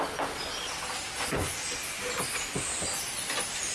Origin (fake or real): real